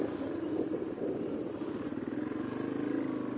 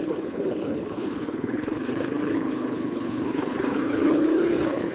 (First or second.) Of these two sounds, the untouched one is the first